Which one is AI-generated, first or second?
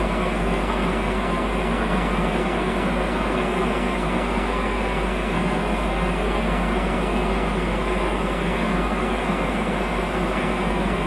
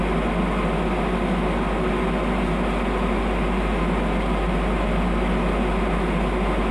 first